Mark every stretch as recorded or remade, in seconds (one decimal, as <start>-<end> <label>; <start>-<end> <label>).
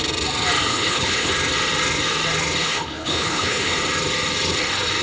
0.0-0.7 recorded; 0.7-1.3 remade; 1.3-2.6 recorded; 2.6-3.8 remade; 3.8-5.0 recorded